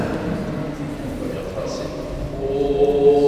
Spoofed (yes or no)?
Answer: no